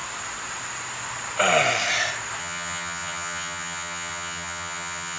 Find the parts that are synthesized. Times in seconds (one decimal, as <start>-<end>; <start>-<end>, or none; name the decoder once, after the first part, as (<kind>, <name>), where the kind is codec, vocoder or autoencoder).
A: 2.4-5.2 (vocoder, HiFi-GAN)